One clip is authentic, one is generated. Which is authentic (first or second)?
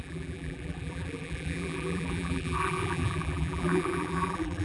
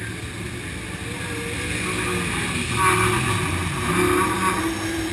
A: second